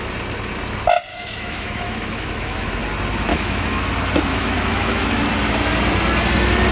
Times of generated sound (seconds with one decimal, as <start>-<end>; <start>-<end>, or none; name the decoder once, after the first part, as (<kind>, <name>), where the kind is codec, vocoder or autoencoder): 1.1-2.7 (autoencoder, DAC-VAE); 3.3-3.8; 4.3-5.2